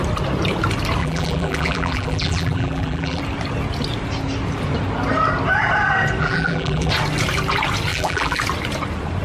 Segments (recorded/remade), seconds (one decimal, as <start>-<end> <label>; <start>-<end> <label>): 0.0-1.0 recorded; 1.0-3.2 remade; 3.2-6.2 recorded; 6.2-6.9 remade; 6.9-7.9 recorded; 7.9-8.4 remade; 8.4-9.2 recorded